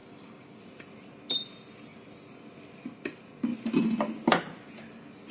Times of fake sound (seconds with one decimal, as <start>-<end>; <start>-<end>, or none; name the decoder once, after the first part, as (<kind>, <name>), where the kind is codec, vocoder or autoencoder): 0.0-0.6 (codec, DAC)